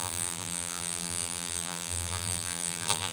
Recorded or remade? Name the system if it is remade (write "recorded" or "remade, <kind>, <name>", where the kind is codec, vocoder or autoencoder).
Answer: remade, vocoder, BigVGAN v2